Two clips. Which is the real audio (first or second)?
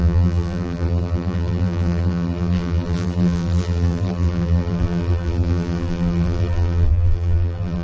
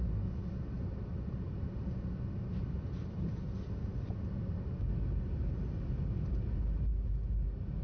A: second